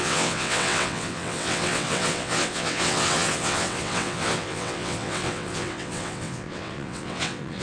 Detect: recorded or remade remade